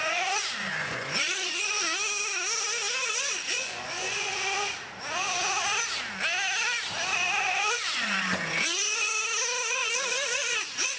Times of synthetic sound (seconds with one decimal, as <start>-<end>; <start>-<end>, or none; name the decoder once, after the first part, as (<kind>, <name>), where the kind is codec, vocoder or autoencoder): 0.0-1.8 (vocoder, Vocos); 3.1-4.3; 7.4-9.1; 9.7-11.0